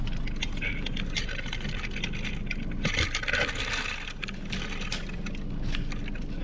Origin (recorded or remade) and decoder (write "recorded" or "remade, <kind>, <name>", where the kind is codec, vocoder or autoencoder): recorded